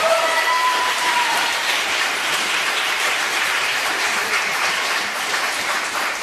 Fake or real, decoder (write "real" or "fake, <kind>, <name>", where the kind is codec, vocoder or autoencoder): fake, vocoder, BigVGAN v2